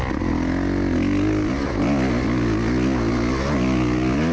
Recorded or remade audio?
recorded